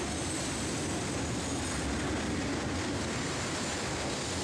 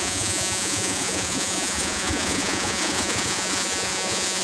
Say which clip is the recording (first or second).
first